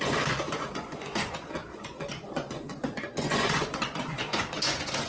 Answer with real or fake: fake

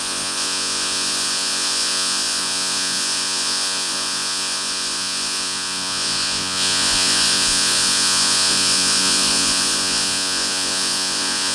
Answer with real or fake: fake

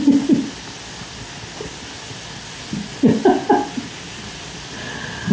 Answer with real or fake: real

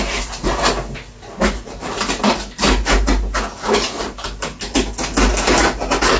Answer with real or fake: real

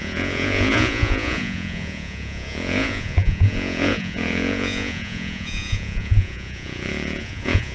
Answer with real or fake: fake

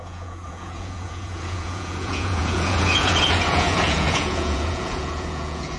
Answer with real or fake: fake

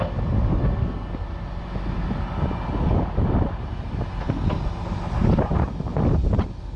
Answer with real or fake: real